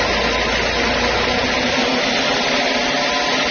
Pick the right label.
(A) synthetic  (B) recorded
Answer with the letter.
B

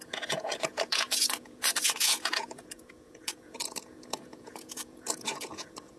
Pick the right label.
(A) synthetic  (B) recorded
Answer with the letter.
A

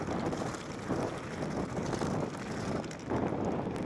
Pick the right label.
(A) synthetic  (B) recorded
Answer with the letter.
B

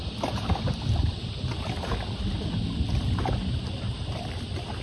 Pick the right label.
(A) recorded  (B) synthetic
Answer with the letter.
A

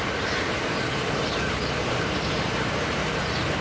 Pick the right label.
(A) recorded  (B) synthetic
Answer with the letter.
B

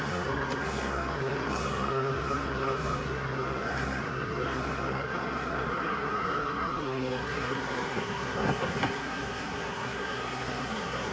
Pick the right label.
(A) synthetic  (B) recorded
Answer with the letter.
A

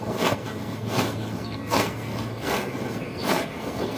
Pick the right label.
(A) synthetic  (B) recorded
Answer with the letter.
A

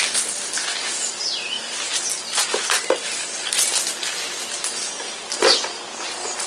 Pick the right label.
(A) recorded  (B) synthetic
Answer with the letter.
A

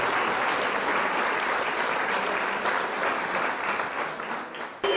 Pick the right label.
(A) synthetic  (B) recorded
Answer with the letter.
B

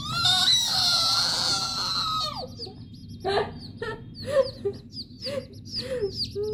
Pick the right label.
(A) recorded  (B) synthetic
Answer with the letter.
A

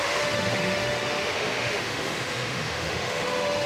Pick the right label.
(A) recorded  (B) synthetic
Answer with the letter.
B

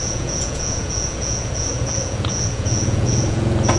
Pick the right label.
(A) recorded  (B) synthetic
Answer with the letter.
B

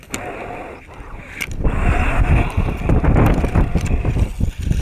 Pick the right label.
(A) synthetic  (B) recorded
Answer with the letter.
B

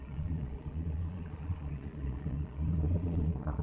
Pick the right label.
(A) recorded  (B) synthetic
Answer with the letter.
B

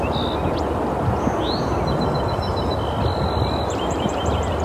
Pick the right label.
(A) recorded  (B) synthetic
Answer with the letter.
A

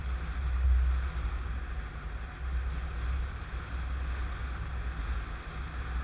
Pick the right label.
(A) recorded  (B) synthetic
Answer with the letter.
A